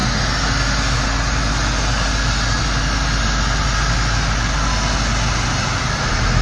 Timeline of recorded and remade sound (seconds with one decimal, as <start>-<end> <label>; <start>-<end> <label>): 0.0-6.4 recorded